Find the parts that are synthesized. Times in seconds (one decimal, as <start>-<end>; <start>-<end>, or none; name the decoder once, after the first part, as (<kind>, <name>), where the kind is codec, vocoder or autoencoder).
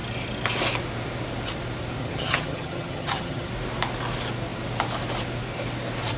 2.0-3.5 (vocoder, HiFi-GAN)